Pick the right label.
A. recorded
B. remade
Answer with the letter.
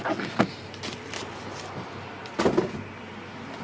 A